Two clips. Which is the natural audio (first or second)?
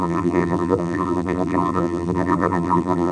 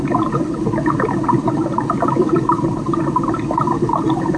second